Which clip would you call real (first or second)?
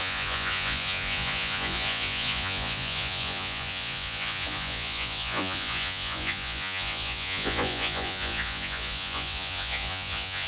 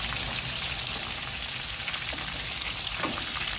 second